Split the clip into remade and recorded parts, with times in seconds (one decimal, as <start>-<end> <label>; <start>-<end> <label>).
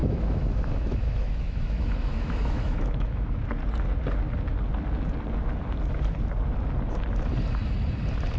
0.0-3.4 remade; 3.4-8.4 recorded